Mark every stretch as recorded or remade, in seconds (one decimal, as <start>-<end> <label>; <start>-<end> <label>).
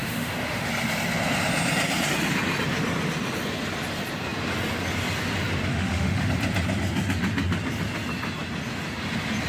0.0-0.7 remade; 0.7-5.7 recorded; 5.7-6.3 remade; 6.3-9.5 recorded